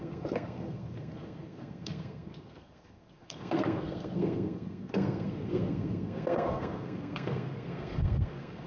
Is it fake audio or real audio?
fake